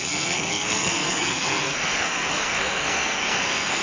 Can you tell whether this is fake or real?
fake